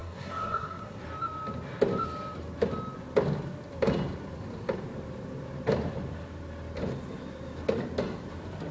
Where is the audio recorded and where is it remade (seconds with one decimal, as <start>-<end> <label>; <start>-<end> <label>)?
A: 0.0-1.0 remade; 1.0-8.7 recorded